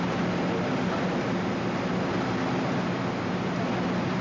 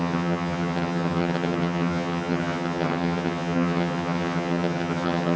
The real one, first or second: first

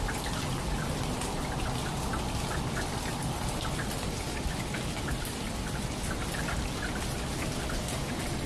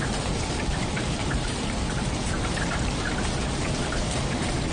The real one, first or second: first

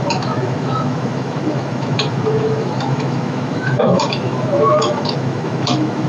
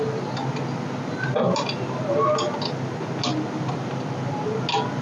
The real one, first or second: second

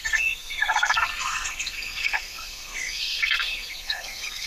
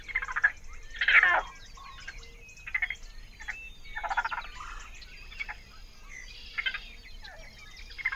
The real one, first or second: second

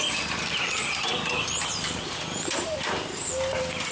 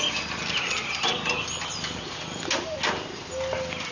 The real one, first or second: second